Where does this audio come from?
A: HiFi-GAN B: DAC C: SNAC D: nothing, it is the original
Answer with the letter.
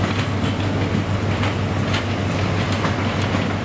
D